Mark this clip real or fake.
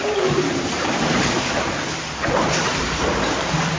fake